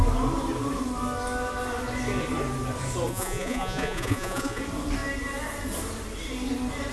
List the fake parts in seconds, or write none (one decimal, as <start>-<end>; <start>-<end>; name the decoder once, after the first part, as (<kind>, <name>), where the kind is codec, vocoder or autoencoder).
3.1-4.6 (vocoder, Vocos)